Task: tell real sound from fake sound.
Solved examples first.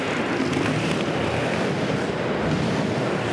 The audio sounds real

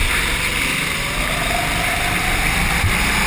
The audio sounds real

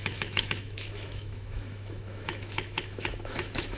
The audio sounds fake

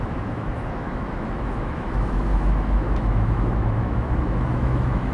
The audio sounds fake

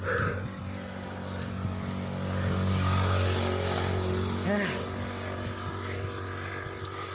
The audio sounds real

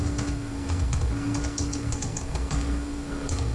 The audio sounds fake